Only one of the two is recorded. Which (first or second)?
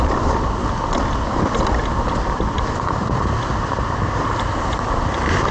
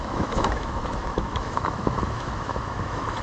first